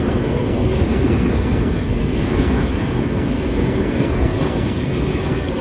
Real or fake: fake